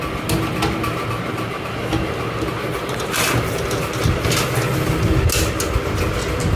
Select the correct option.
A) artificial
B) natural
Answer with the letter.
B